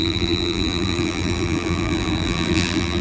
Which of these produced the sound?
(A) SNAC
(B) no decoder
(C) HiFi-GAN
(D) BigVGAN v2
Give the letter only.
D